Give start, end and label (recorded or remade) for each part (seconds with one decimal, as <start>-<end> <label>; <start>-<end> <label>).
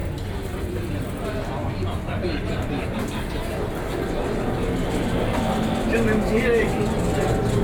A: 0.0-7.6 recorded